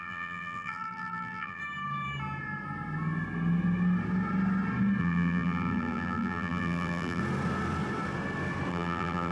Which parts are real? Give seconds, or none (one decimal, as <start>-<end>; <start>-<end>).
1.6-5.0; 7.2-8.7